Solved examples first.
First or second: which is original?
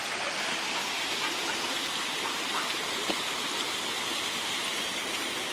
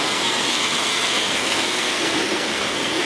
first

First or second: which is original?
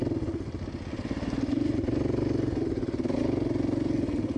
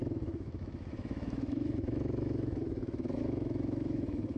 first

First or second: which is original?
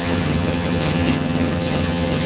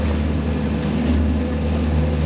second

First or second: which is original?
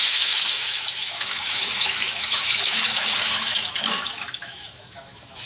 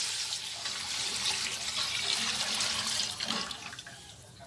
second